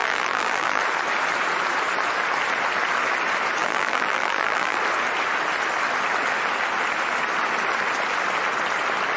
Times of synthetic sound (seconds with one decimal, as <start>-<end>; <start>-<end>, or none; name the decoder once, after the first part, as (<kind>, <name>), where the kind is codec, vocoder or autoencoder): 0.0-0.8 (vocoder, BigVGAN v2); 3.6-4.8